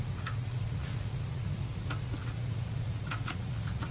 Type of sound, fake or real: fake